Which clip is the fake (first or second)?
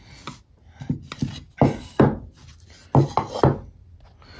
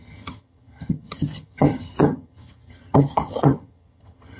second